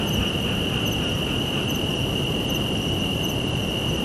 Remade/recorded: recorded